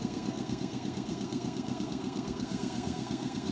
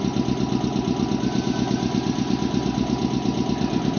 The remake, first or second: first